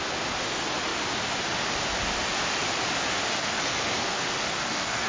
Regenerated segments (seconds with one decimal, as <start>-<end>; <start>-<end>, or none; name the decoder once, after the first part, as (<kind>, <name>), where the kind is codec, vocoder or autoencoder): 3.4-5.1 (codec, SNAC)